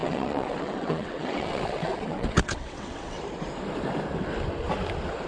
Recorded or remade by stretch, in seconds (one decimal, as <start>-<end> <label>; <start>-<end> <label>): 0.0-3.2 remade; 3.2-5.3 recorded